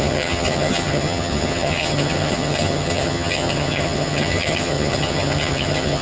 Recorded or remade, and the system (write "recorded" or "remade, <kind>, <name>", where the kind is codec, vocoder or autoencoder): remade, vocoder, HiFi-GAN